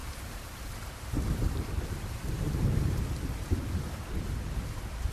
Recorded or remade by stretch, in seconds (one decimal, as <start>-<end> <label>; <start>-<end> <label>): 0.0-3.1 remade; 3.1-5.1 recorded